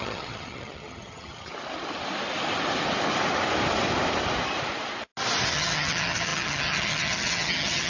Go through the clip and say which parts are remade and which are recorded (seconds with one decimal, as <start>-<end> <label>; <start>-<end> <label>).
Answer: 0.0-1.5 remade; 1.5-5.5 recorded; 5.5-7.9 remade

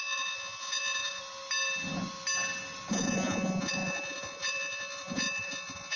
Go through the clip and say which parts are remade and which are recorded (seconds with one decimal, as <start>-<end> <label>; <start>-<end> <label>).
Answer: 0.0-1.2 remade; 1.2-2.9 recorded; 2.9-6.0 remade

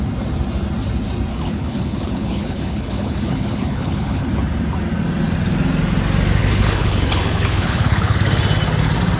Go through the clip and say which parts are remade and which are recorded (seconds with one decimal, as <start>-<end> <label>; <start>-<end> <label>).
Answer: 0.0-1.3 recorded; 1.3-4.2 remade; 4.2-6.4 recorded; 6.4-8.2 remade; 8.2-9.2 recorded

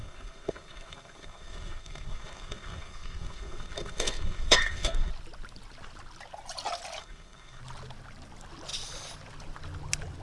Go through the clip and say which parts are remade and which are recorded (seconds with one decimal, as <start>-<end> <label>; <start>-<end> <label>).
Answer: 0.0-5.1 remade; 5.1-7.0 recorded; 7.0-7.6 remade; 7.6-10.2 recorded

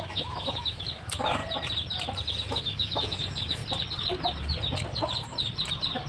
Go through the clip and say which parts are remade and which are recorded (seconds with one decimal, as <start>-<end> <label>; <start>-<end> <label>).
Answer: 0.0-1.4 remade; 1.4-2.5 recorded; 2.5-3.6 remade; 3.6-6.1 recorded

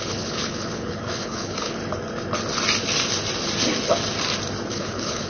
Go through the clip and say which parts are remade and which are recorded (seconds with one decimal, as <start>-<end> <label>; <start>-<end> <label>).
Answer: 0.0-1.8 remade; 1.8-4.7 recorded; 4.7-5.3 remade